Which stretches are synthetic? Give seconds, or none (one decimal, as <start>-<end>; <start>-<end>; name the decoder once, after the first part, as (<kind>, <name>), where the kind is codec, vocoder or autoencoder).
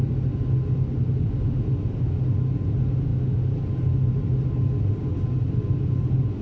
none